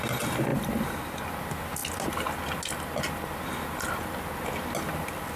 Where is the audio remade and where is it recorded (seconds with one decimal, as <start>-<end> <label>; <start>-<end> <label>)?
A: 0.0-5.4 recorded